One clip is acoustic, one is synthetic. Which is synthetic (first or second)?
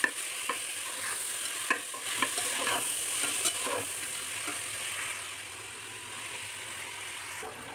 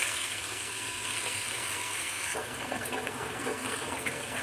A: second